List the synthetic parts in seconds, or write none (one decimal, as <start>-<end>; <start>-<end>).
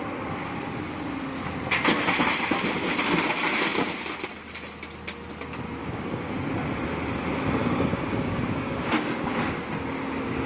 5.8-6.3; 7.6-9.7